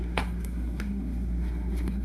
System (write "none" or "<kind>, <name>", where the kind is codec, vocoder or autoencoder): codec, SNAC